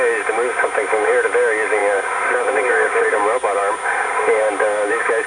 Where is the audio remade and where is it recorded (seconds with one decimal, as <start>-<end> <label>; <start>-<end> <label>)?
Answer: 0.0-5.3 recorded